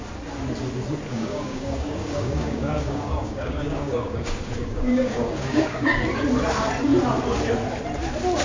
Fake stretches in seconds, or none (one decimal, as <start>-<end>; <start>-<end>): 1.1-6.0